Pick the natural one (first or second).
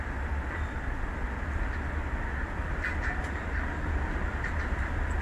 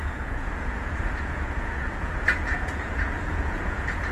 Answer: first